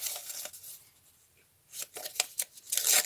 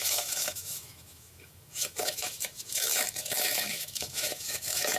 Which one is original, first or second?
first